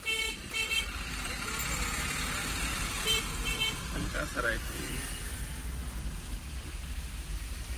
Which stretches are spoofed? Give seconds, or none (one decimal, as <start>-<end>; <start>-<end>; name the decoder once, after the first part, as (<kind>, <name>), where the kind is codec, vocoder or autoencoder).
0.0-1.3 (vocoder, BigVGAN v2); 2.4-3.2